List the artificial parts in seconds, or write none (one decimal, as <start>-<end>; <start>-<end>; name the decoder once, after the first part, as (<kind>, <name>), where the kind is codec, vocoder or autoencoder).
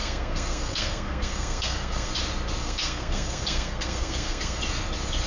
0.0-2.1 (codec, SNAC); 2.6-4.6